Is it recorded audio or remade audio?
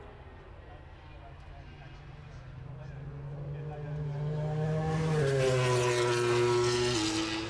recorded